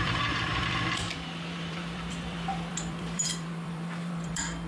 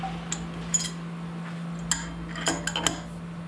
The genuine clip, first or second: second